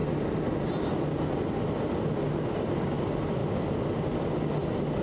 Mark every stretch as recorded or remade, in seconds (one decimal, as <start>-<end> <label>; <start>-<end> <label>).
0.0-5.0 recorded